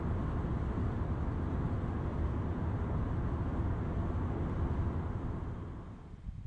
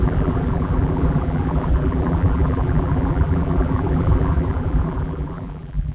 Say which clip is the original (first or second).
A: first